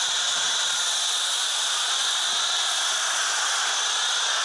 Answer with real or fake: real